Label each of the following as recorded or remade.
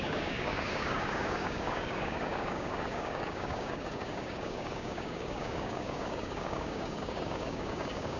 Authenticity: remade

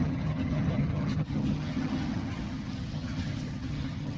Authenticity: remade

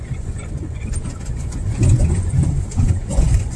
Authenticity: remade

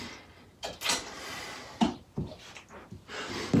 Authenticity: recorded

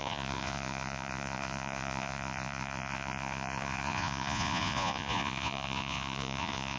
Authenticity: remade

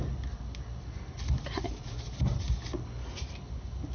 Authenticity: recorded